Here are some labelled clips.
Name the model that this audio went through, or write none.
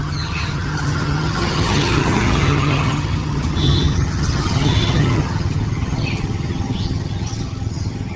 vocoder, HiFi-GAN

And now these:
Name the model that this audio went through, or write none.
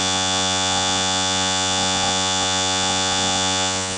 vocoder, Vocos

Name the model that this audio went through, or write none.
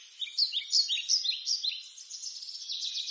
none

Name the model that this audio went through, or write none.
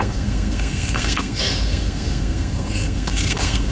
codec, SNAC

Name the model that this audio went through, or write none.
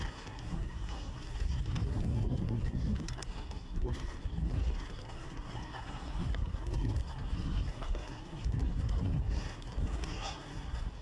codec, SNAC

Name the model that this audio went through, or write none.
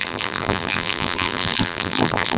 vocoder, BigVGAN v2